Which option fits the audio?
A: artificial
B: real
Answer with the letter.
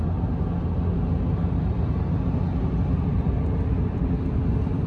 B